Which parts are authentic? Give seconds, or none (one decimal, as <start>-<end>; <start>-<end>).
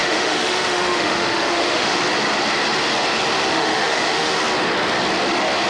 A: 2.0-3.5; 4.4-5.7